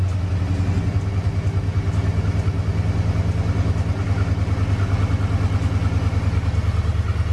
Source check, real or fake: real